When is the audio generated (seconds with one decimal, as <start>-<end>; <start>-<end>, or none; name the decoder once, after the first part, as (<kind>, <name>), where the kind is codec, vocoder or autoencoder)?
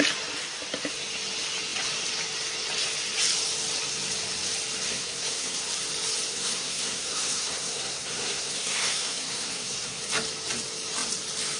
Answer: 4.9-5.6 (codec, SNAC); 6.3-10.0